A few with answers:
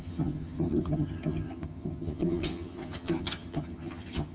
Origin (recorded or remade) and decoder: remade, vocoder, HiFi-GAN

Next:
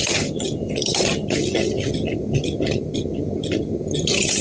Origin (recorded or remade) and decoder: remade, vocoder, HiFi-GAN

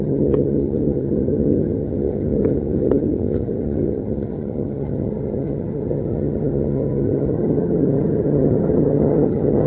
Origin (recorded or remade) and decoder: remade, vocoder, HiFi-GAN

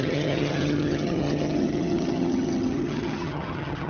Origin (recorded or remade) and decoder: remade, vocoder, HiFi-GAN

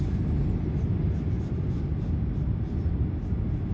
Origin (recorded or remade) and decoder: recorded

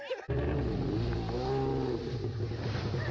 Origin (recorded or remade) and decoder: recorded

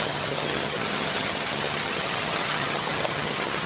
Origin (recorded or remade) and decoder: remade, vocoder, HiFi-GAN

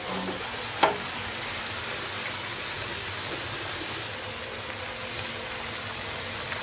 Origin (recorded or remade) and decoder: recorded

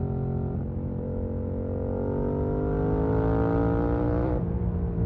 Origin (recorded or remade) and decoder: recorded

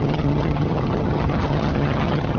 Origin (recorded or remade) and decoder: remade, vocoder, HiFi-GAN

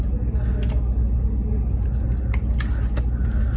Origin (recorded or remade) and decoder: recorded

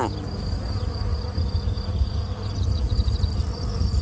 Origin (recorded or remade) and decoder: recorded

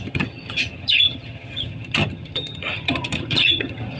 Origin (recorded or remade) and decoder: remade, vocoder, HiFi-GAN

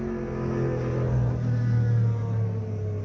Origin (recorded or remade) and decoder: recorded